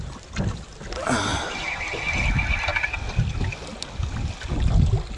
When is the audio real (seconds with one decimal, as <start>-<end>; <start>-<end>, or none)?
0.0-1.3; 1.8-5.2